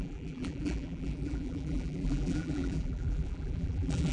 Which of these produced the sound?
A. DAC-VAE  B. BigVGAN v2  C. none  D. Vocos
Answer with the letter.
B